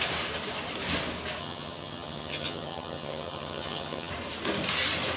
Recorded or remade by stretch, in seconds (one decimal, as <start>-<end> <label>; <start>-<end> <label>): 0.0-1.4 recorded; 1.4-4.1 remade; 4.1-5.2 recorded